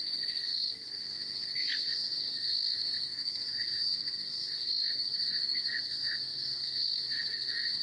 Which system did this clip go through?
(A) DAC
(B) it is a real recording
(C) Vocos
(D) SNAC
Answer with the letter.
D